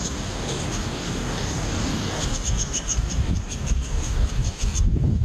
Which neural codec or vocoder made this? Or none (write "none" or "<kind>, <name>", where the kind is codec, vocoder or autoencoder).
codec, DAC